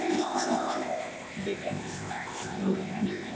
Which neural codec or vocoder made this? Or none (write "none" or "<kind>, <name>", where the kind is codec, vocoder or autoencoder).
codec, ZipCodec